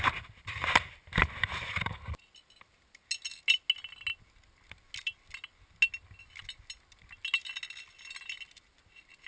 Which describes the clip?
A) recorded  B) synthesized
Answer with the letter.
A